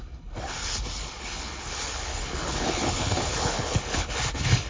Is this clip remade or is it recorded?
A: remade